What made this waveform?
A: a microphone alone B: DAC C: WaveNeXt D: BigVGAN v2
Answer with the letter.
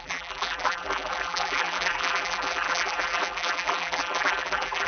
D